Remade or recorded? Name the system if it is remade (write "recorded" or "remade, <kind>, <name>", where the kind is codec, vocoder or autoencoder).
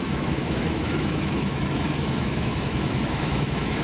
remade, autoencoder, DAC-VAE